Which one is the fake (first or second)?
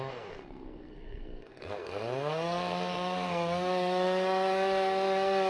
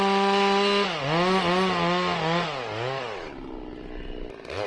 first